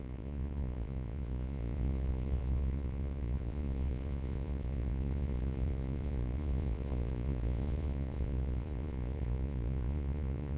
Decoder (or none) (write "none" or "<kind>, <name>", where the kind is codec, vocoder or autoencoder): vocoder, Vocos